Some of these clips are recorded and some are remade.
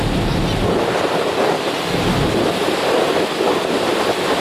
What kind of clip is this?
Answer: recorded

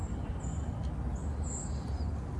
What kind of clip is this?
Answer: recorded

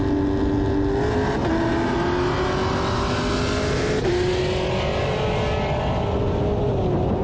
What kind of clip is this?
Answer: recorded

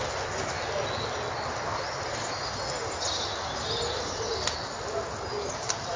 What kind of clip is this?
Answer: recorded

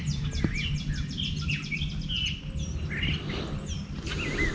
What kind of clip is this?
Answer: recorded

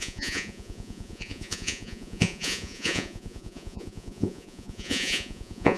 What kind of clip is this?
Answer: remade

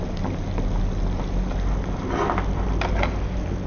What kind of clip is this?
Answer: recorded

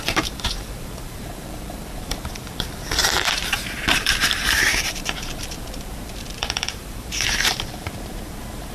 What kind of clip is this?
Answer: remade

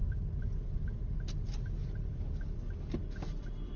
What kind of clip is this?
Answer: recorded